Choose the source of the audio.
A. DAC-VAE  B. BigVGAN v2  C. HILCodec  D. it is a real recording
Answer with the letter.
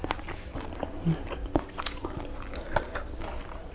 D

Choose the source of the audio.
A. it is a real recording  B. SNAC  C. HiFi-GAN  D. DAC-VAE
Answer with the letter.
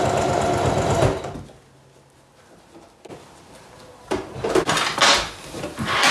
A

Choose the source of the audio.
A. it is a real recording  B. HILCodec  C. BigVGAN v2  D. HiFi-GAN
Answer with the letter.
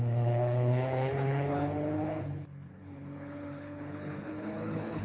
B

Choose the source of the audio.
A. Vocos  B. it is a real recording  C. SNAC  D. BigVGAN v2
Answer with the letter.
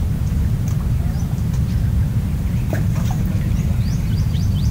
D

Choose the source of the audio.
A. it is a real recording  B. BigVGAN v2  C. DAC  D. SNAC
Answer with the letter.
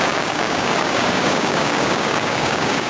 C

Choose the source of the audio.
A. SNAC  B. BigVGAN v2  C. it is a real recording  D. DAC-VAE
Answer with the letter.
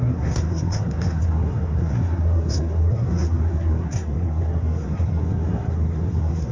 A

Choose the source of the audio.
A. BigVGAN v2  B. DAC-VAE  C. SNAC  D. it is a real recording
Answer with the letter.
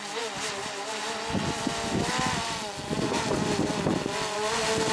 D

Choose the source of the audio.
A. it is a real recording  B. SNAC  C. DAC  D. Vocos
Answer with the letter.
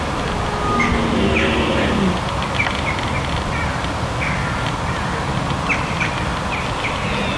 A